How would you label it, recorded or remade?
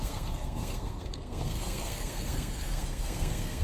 remade